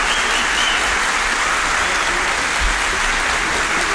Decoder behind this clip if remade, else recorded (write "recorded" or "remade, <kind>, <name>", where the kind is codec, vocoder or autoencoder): recorded